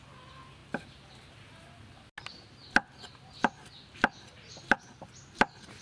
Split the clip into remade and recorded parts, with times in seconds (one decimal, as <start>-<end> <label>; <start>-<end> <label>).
0.0-5.8 recorded